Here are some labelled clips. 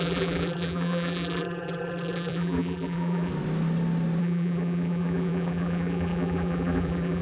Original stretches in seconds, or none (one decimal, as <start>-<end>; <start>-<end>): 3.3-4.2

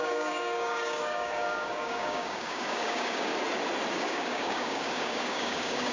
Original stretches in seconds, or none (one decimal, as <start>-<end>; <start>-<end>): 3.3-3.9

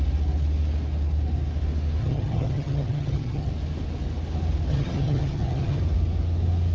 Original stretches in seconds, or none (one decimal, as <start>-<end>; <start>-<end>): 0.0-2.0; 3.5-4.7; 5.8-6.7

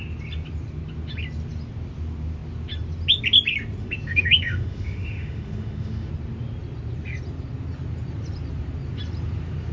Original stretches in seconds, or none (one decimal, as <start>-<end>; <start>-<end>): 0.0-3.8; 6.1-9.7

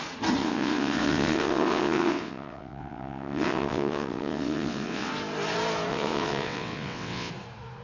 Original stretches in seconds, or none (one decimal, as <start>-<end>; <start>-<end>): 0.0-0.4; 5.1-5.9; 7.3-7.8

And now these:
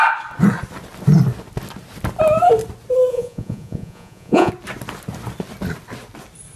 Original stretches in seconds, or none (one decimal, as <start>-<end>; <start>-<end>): 0.0-3.1; 4.5-6.6